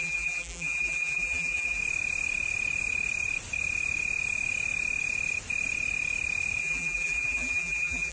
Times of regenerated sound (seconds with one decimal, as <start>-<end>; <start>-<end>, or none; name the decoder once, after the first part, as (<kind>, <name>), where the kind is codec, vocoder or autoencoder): 0.0-1.8 (vocoder, BigVGAN v2); 6.6-8.1